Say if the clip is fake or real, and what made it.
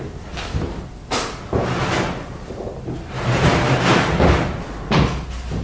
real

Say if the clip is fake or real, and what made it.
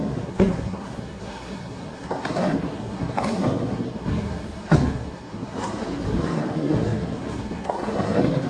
fake, codec, SNAC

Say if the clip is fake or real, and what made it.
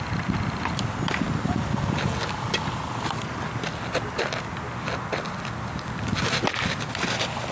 real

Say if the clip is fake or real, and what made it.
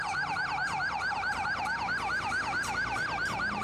real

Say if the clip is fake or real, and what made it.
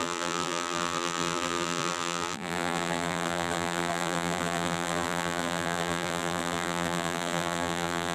fake, vocoder, BigVGAN v2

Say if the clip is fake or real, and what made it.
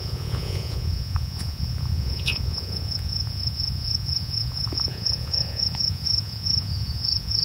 fake, vocoder, Vocos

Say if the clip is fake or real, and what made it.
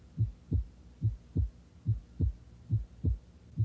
real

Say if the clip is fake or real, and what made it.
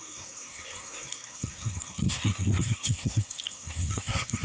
fake, codec, SNAC